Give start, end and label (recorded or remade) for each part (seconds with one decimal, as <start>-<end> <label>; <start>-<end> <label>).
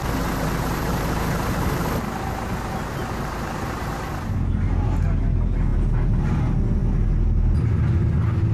0.0-0.8 recorded; 0.8-4.0 remade; 4.0-8.5 recorded